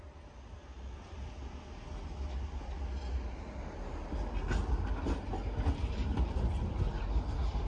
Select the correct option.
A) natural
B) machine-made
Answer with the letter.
A